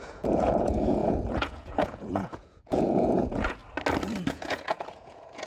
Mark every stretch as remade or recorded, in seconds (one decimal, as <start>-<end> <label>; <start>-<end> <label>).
0.0-3.6 remade; 3.6-4.3 recorded; 4.3-5.5 remade